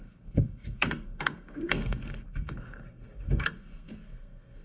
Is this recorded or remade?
remade